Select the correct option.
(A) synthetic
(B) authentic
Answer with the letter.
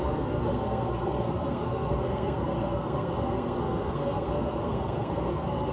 A